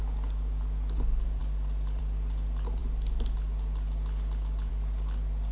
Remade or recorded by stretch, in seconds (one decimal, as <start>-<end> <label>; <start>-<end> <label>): 0.0-5.5 recorded